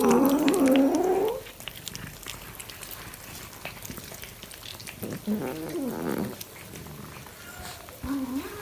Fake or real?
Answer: real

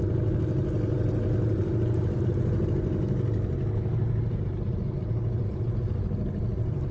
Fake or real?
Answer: real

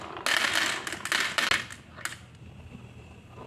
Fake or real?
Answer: real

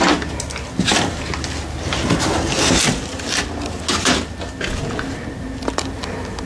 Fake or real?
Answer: real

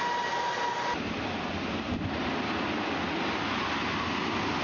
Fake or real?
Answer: real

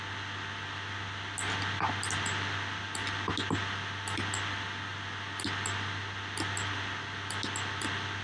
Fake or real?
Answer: real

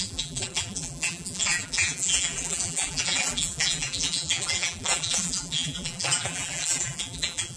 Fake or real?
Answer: fake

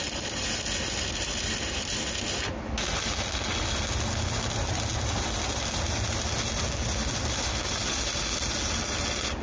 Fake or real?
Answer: real